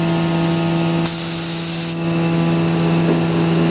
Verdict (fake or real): real